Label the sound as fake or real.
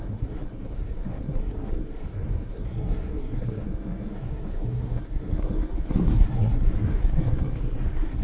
fake